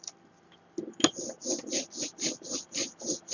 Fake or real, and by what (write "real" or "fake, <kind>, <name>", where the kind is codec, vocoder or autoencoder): real